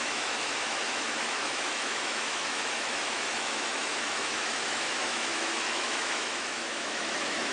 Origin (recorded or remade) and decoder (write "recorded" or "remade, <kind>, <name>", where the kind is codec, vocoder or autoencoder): remade, autoencoder, DAC-VAE